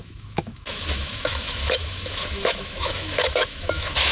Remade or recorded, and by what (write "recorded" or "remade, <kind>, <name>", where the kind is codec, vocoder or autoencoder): remade, autoencoder, DAC-VAE